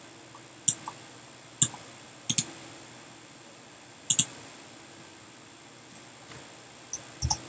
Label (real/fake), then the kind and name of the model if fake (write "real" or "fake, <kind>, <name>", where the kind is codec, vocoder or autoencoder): real